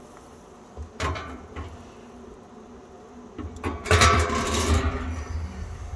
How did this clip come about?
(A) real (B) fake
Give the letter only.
A